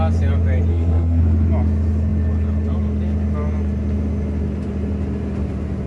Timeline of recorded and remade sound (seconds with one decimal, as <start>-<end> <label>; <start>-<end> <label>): 0.0-0.7 recorded; 0.7-1.2 remade; 1.2-5.9 recorded